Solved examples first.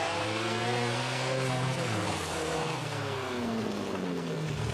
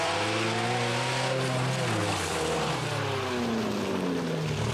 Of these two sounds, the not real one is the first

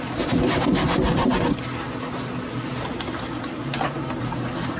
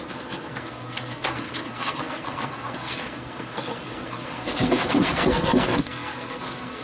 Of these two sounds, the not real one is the second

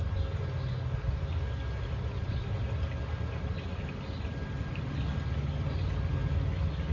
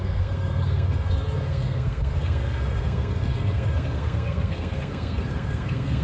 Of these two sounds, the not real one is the second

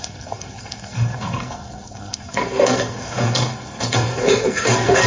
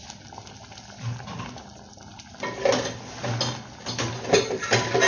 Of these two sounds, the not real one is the first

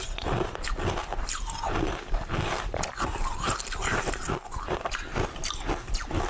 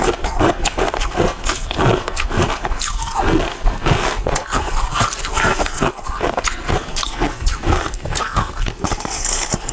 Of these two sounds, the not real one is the second